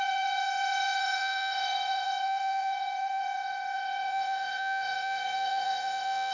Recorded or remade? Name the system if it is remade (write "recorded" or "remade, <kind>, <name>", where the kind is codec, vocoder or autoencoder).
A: remade, vocoder, Vocos